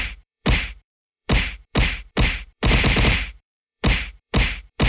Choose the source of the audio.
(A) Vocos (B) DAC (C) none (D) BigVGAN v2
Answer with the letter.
D